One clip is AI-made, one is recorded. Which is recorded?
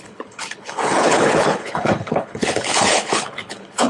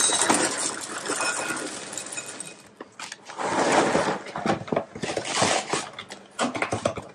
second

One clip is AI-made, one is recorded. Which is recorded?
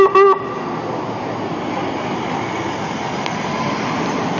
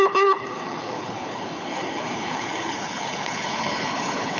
first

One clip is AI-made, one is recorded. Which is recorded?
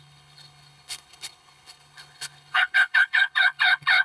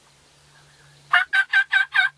second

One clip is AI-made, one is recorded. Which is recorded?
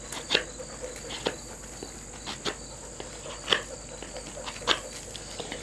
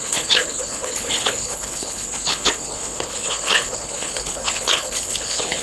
first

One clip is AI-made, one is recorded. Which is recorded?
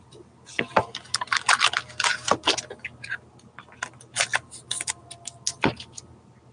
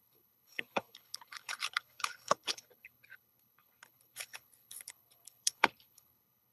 first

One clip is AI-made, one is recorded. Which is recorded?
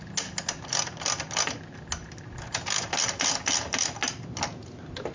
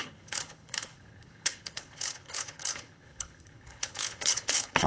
first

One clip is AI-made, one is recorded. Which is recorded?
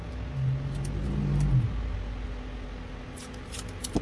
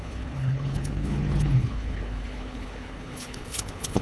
first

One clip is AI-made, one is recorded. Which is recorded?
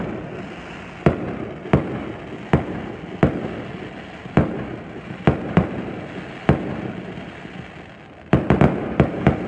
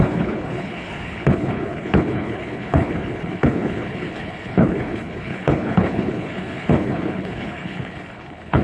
first